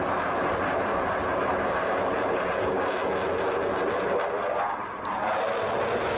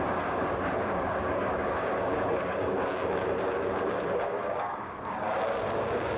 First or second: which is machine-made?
second